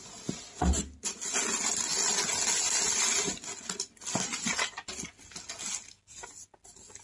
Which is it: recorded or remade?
recorded